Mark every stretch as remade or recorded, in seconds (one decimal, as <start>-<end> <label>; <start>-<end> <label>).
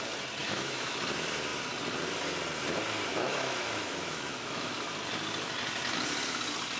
0.0-0.4 recorded; 0.4-1.0 remade; 1.0-3.1 recorded; 3.1-4.8 remade; 4.8-6.8 recorded